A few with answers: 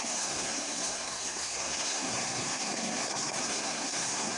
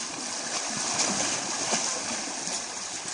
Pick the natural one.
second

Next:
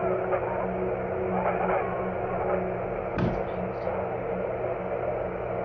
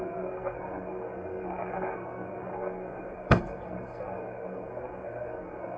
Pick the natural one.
first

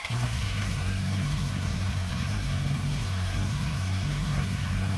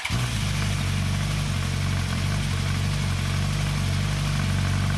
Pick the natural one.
second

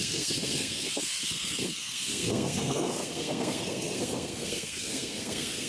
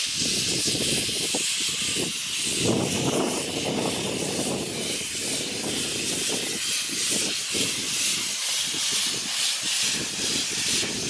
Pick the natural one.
second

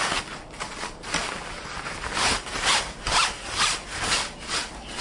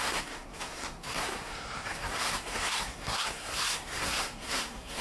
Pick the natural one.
first